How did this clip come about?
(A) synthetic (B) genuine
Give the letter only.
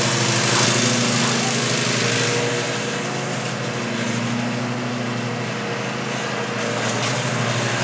B